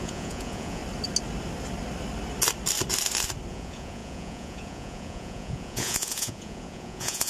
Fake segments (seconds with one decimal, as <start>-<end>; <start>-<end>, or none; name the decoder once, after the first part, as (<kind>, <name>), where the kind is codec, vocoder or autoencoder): 0.0-0.8 (vocoder, Vocos); 3.5-7.3